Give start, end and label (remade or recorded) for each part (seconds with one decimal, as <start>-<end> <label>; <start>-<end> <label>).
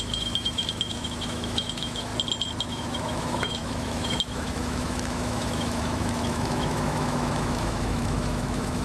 0.0-2.1 remade; 2.1-2.6 recorded; 2.6-8.8 remade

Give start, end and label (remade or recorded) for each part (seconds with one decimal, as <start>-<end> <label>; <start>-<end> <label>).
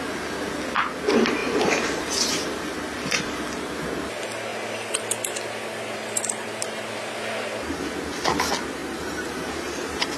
0.0-1.4 recorded; 1.4-2.6 remade; 2.6-8.8 recorded; 8.8-10.2 remade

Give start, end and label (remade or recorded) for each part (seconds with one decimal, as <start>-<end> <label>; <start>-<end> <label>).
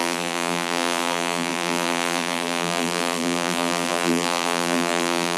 0.0-5.4 remade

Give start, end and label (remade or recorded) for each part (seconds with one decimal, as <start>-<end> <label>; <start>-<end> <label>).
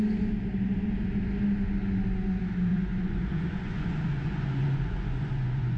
0.0-2.7 recorded; 2.7-5.8 remade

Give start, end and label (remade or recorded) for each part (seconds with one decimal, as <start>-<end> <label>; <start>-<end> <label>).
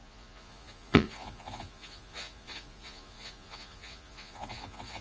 0.0-5.0 remade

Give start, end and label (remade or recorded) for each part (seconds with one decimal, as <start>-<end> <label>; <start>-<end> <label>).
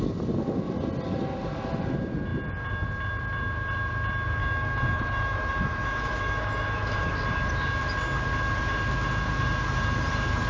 0.0-4.4 recorded; 4.4-7.1 remade; 7.1-10.5 recorded